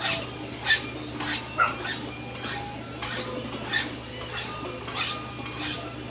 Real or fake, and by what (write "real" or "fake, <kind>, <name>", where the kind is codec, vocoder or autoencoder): real